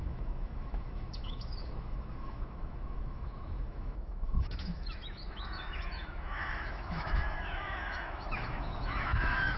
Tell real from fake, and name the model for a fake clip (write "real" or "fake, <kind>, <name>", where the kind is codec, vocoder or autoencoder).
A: fake, autoencoder, DAC-VAE